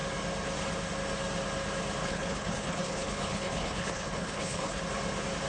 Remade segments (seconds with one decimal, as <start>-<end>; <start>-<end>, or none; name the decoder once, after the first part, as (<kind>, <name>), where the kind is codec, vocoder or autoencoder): 2.0-4.8 (codec, HILCodec)